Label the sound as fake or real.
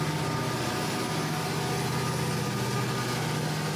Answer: real